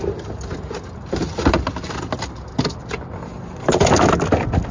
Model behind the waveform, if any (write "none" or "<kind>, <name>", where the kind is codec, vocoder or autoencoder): none